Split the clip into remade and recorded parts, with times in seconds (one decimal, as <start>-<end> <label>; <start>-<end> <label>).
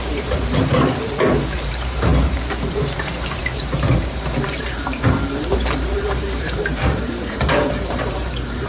0.0-8.7 remade